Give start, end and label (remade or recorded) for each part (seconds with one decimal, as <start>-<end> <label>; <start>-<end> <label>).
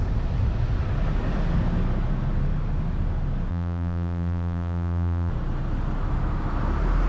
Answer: 0.0-3.5 recorded; 3.5-5.3 remade; 5.3-7.1 recorded